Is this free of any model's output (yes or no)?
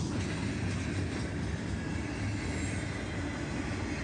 yes